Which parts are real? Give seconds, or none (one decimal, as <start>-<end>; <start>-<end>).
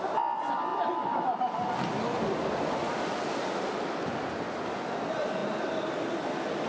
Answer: 0.0-6.7